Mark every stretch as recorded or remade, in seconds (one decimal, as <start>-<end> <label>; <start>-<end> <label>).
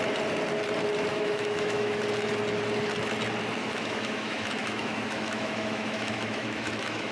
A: 0.0-1.1 recorded; 1.1-2.0 remade; 2.0-3.6 recorded; 3.6-7.1 remade